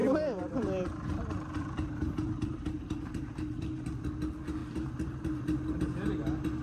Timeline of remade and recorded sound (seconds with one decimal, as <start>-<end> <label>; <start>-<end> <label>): 0.0-4.0 remade; 4.0-4.6 recorded; 4.6-5.6 remade; 5.6-6.6 recorded